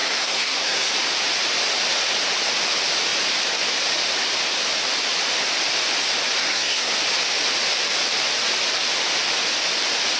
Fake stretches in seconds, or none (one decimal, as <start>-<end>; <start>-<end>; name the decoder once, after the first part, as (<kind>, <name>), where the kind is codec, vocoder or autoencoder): 0.0-0.9 (codec, SNAC); 6.4-6.9